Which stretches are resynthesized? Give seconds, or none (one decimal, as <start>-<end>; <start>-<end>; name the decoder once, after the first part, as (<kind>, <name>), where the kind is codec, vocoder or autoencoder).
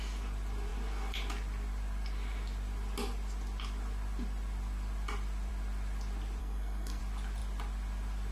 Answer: 6.4-7.0 (codec, SNAC)